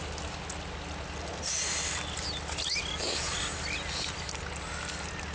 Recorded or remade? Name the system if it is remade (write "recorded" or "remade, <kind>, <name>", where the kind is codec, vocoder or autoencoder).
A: recorded